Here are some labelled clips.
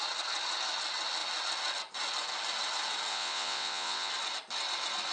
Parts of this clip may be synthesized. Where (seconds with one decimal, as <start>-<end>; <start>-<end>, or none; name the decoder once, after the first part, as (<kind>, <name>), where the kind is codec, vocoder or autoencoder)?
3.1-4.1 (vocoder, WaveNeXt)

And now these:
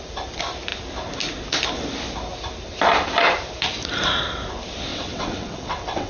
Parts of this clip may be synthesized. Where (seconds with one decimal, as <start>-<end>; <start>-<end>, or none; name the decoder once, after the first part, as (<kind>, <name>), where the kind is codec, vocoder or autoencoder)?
4.9-6.1 (vocoder, WaveNeXt)

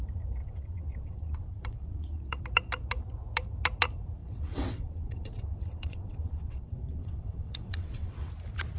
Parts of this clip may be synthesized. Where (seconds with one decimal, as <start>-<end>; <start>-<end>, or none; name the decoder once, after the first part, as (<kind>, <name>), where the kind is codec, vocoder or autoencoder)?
0.4-2.4 (vocoder, WaveNeXt); 4.2-8.3

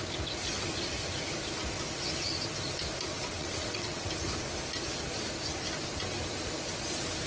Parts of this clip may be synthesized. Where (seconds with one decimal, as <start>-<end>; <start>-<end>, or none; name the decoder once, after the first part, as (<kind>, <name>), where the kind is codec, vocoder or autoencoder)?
3.1-4.1 (vocoder, WaveNeXt)

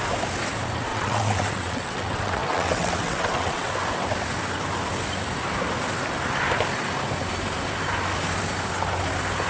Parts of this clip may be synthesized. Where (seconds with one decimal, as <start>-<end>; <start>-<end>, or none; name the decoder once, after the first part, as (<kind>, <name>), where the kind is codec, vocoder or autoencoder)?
0.9-3.7 (vocoder, WaveNeXt)

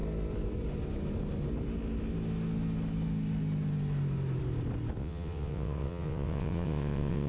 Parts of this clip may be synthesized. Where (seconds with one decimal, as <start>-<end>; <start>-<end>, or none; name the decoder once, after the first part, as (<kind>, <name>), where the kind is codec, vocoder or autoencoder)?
5.0-7.3 (vocoder, WaveNeXt)